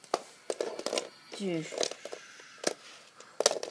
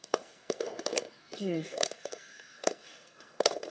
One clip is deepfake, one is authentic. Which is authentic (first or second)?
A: first